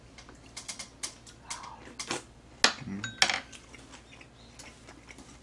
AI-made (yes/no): no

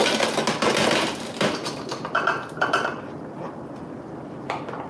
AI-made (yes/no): no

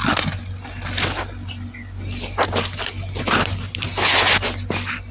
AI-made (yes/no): no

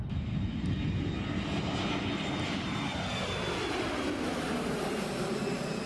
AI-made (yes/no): no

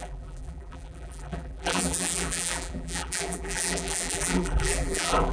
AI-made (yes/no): yes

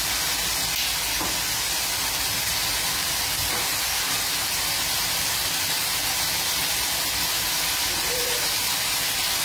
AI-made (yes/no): no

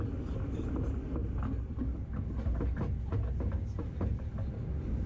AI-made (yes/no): no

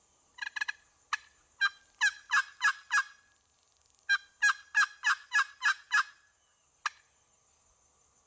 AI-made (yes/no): no